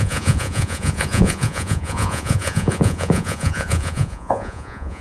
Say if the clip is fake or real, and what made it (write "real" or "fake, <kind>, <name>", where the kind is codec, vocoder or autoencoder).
fake, vocoder, Vocos